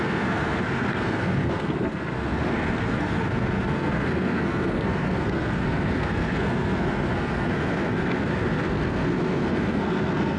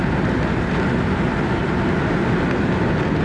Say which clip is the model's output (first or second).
first